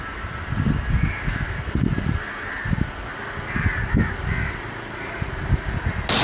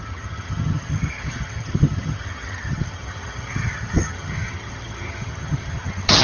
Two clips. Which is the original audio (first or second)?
first